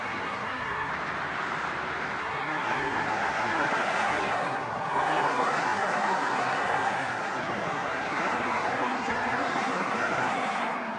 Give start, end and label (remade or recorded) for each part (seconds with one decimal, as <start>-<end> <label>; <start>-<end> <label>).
0.0-0.9 remade; 0.9-2.2 recorded; 2.2-11.0 remade